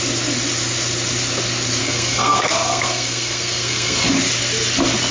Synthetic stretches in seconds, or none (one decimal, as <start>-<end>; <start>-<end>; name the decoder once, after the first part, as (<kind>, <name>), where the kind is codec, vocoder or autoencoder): 1.8-4.1 (codec, SNAC)